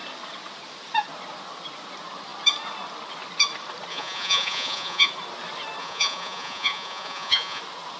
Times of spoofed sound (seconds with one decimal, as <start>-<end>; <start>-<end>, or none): 3.9-5.1; 5.8-7.6